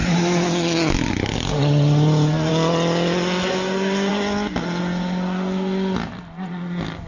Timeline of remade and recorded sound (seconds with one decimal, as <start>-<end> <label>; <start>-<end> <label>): 0.0-7.1 recorded